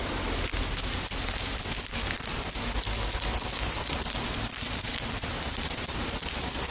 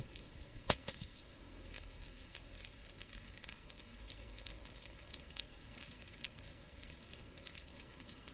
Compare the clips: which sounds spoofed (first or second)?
second